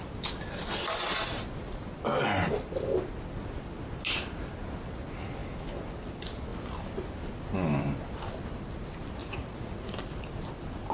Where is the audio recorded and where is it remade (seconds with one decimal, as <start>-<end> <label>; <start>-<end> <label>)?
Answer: 0.0-9.2 recorded; 9.2-9.9 remade; 9.9-10.9 recorded